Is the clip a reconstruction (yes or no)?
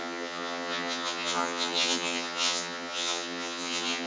yes